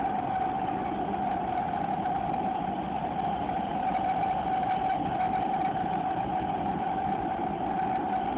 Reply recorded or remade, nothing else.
recorded